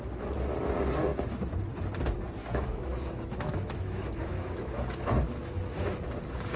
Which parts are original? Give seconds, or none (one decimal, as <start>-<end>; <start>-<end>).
0.0-2.4; 6.0-6.6